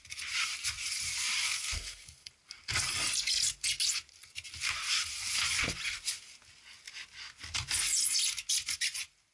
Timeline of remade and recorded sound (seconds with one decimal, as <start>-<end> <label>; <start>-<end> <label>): 0.0-1.4 recorded; 1.4-2.3 remade; 2.3-9.3 recorded

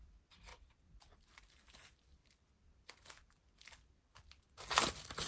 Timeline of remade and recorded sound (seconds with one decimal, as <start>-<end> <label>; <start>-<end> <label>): 0.0-5.3 recorded